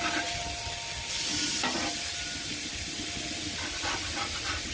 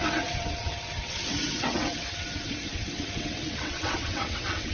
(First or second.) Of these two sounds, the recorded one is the first